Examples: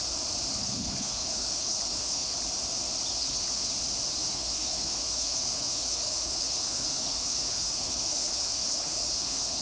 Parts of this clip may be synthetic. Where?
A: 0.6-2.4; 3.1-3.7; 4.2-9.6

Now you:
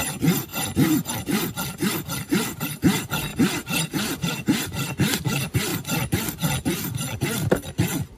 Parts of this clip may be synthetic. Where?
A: 0.5-1.1; 3.3-4.6

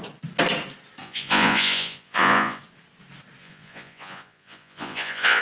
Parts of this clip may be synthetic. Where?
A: 1.0-2.6; 3.4-5.4

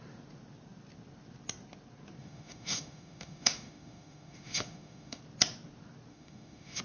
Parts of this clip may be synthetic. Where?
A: 2.2-5.2; 6.1-6.8